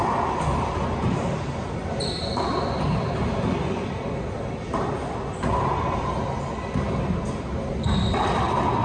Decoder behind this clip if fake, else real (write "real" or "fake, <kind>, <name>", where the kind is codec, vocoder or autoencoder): real